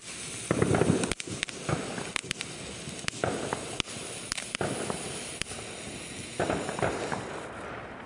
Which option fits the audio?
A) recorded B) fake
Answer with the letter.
A